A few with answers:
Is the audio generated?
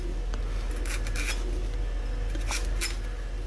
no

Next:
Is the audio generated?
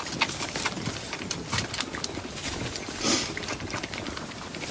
no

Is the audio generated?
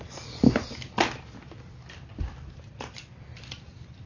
no